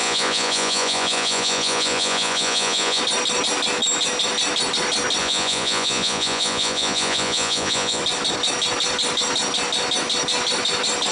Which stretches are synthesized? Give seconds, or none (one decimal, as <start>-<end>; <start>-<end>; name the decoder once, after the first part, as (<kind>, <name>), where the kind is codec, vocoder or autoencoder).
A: 0.0-3.0 (vocoder, Vocos); 5.2-8.0